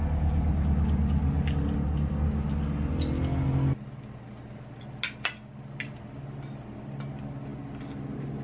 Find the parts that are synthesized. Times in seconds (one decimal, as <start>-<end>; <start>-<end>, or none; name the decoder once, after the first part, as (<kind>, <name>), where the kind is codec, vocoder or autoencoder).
none